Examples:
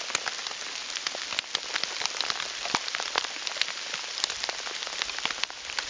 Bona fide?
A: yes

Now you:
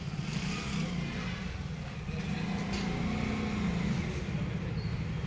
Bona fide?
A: yes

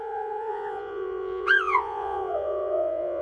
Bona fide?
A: no